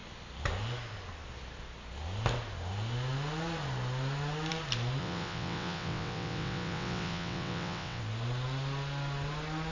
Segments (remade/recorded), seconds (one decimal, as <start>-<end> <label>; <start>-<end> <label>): 0.0-5.0 recorded; 5.0-8.0 remade; 8.0-9.7 recorded